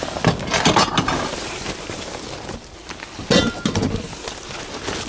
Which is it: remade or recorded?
recorded